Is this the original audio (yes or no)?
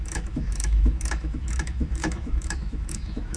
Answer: no